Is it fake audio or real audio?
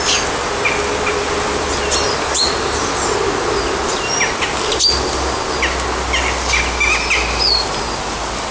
real